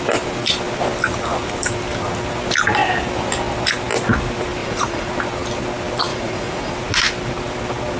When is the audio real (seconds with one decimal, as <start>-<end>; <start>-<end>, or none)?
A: 0.0-4.6; 5.1-6.1; 6.7-8.0